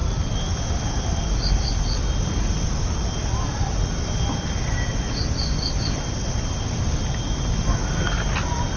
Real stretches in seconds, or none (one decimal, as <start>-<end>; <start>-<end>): 0.0-8.8